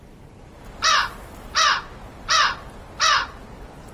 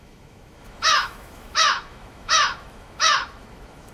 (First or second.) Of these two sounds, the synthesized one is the second